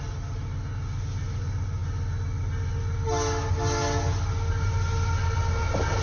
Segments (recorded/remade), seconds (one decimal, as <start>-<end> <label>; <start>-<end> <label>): 0.0-6.0 recorded